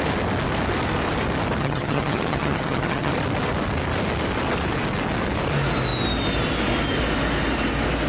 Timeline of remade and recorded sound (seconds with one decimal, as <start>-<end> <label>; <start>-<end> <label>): 0.0-1.6 recorded; 1.6-3.1 remade; 3.1-8.1 recorded